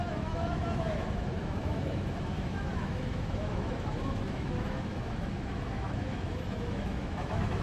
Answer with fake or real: fake